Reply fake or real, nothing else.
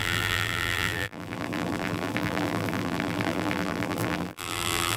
fake